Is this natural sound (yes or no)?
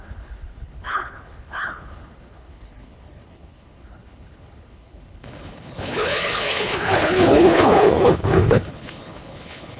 no